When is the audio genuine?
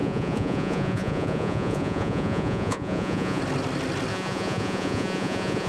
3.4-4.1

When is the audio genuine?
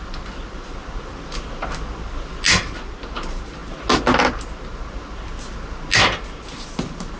0.0-7.2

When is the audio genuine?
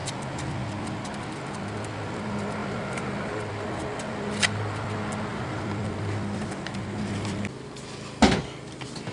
0.5-5.3; 6.7-9.1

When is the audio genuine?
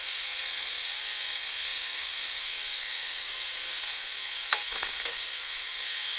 none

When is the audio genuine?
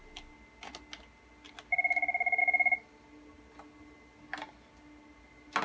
0.0-5.6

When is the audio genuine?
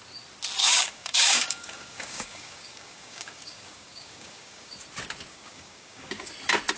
0.0-0.6; 4.7-5.3; 6.3-6.8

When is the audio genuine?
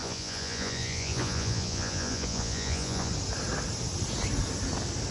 3.1-5.1